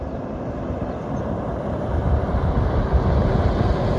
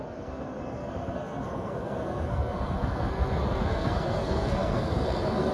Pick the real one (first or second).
first